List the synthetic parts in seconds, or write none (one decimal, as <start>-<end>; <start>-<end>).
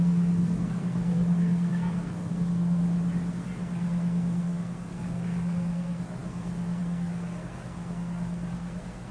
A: 0.0-2.8; 3.3-9.1